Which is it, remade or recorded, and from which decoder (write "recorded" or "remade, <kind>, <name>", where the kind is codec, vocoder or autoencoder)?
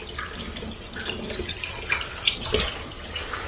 recorded